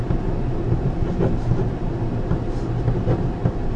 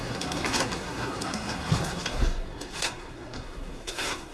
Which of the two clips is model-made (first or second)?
second